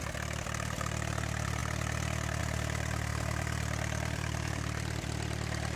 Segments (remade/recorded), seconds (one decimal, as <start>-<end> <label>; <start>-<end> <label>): 0.0-3.1 recorded; 3.1-5.8 remade